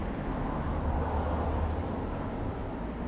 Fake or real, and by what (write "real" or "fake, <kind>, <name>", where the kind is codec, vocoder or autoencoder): real